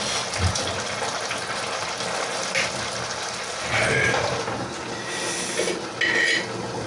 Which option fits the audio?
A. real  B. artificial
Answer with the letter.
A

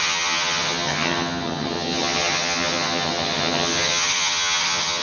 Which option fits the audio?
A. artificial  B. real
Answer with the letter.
A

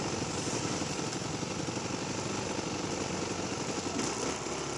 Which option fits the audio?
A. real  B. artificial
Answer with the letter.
A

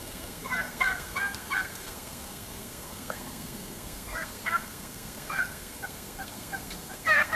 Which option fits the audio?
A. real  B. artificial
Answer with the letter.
B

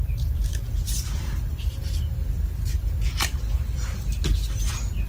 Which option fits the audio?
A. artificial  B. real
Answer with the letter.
B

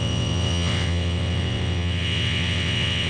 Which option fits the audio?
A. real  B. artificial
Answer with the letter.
B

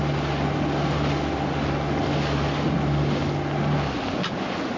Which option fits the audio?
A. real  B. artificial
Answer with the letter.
A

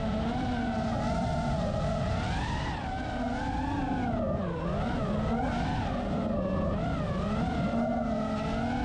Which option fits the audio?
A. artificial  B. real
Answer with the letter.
B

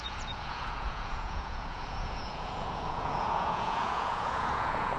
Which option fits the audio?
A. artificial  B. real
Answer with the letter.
A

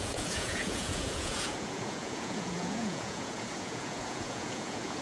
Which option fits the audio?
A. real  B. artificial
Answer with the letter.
B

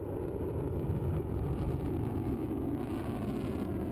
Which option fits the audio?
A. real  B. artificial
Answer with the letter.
A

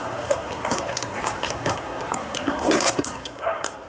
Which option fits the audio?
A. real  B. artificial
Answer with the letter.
B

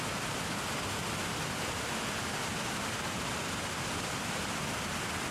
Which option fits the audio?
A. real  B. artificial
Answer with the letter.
A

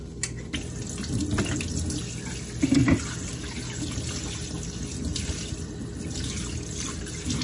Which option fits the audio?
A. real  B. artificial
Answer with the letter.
A